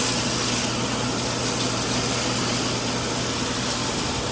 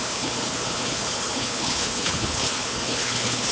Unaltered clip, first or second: first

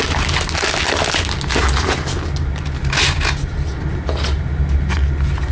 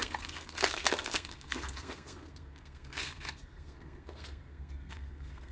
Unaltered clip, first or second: first